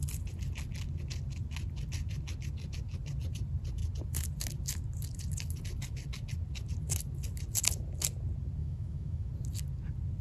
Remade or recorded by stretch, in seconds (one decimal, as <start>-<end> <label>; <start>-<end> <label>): 0.0-8.6 recorded; 8.6-9.3 remade; 9.3-10.2 recorded